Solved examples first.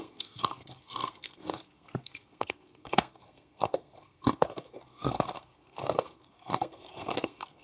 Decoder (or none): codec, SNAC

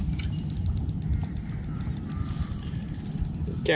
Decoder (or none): none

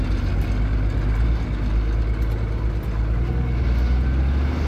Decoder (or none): none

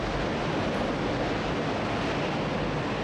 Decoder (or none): none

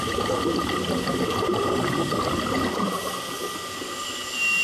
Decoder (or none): none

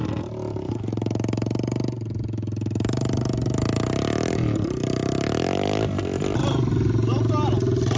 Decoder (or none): none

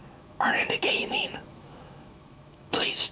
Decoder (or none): autoencoder, DAC-VAE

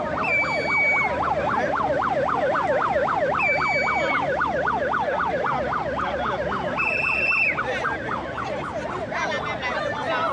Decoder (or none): none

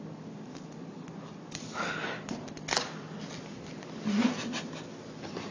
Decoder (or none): none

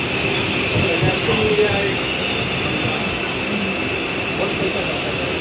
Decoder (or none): none